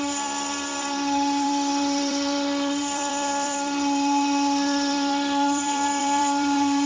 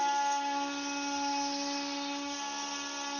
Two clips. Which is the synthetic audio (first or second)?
first